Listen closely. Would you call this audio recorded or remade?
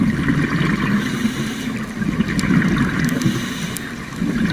recorded